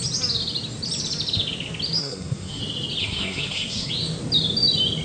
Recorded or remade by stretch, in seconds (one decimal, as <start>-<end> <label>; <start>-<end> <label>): 0.0-2.0 recorded; 2.0-2.6 remade; 2.6-3.0 recorded; 3.0-3.9 remade; 3.9-5.0 recorded